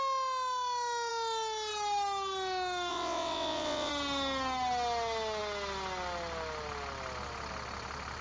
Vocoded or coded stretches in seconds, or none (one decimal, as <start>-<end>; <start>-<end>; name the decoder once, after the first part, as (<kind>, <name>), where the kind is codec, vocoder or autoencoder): 2.9-3.9 (vocoder, WaveNeXt)